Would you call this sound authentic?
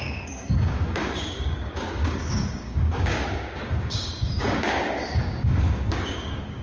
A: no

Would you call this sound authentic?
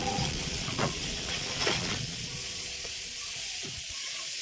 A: no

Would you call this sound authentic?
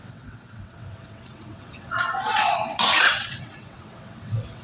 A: no